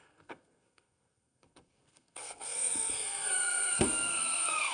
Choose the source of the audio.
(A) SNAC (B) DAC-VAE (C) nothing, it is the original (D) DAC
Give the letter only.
A